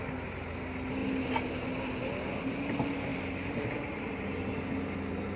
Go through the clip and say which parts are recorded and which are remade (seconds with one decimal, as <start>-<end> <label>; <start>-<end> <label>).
0.0-5.4 recorded